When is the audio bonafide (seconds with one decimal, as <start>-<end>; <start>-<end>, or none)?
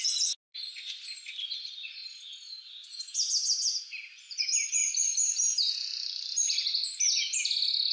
0.0-7.9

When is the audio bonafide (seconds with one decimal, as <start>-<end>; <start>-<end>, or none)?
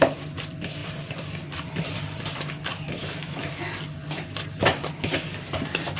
0.0-3.0; 3.5-6.0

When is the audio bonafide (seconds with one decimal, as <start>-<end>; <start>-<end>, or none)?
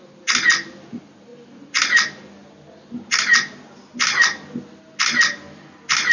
0.0-6.1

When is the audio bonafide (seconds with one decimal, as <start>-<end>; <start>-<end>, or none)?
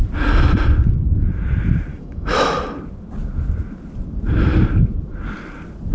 0.0-1.9; 2.5-5.9